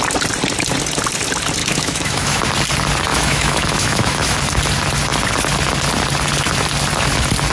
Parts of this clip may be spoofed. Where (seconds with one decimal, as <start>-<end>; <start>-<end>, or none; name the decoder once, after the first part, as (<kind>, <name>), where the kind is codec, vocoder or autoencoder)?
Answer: 1.6-2.4 (autoencoder, DAC-VAE); 3.1-4.4